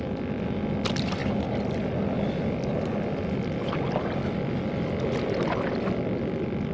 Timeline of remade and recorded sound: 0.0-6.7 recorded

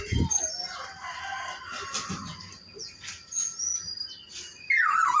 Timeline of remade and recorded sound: 0.0-5.2 recorded

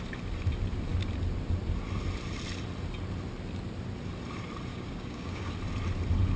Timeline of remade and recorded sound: 0.0-4.7 recorded; 4.7-5.5 remade; 5.5-6.4 recorded

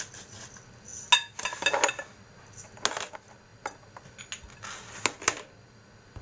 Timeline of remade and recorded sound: 0.0-6.2 recorded